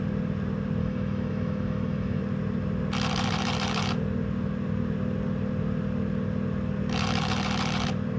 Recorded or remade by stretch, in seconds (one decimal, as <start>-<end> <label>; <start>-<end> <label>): 0.0-0.8 recorded; 0.8-2.2 remade; 2.2-8.2 recorded